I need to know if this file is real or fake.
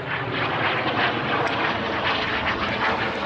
real